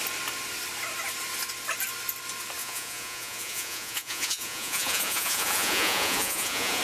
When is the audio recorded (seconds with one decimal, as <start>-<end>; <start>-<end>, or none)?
0.0-2.6